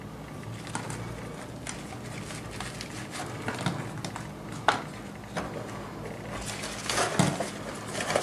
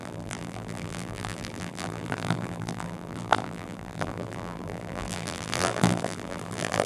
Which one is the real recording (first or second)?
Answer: first